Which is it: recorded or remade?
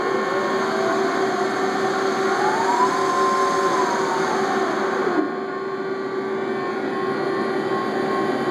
recorded